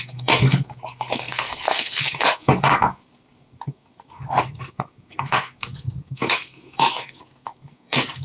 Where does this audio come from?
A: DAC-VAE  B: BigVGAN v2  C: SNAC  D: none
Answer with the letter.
C